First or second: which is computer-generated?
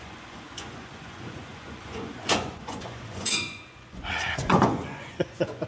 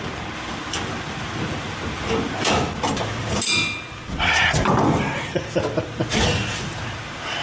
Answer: first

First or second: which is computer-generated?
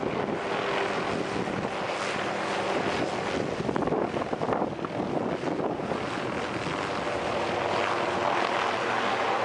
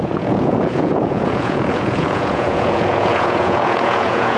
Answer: second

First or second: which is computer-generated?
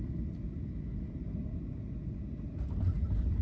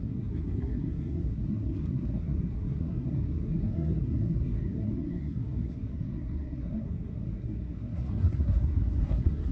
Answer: second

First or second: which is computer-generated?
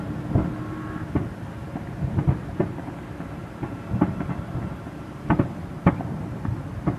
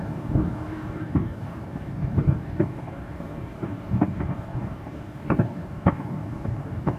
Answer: second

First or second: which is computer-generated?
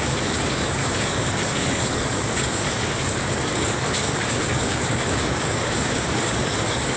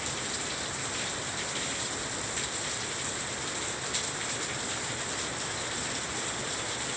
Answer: first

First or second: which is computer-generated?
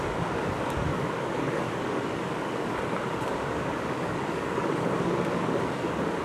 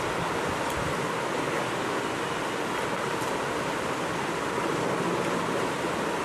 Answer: first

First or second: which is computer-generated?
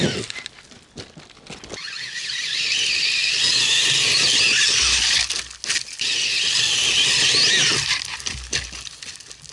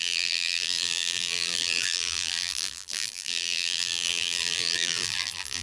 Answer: second